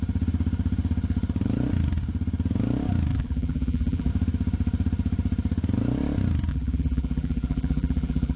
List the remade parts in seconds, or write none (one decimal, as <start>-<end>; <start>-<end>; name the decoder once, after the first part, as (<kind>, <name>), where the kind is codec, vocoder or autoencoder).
3.1-4.1 (vocoder, BigVGAN v2); 6.5-8.4